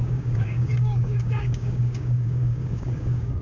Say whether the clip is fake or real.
fake